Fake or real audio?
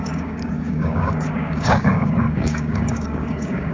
fake